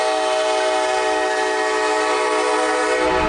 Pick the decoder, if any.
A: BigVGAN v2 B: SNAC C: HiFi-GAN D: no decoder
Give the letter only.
D